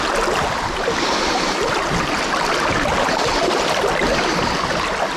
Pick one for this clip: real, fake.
real